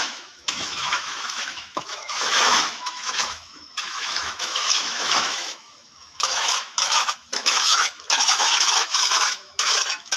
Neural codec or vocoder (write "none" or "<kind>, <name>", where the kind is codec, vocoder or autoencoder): autoencoder, DAC-VAE